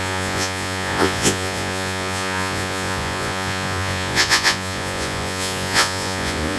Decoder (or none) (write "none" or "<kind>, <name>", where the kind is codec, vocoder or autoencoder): vocoder, Vocos